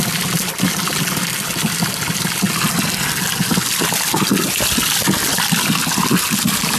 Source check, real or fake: real